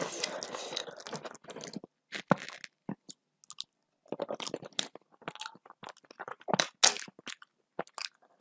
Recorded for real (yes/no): yes